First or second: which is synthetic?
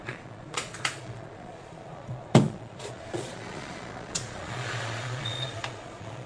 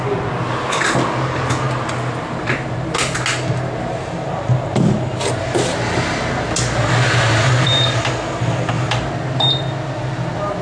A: first